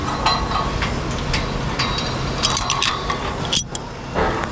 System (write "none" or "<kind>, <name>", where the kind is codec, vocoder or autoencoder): none